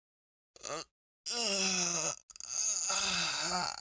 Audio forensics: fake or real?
real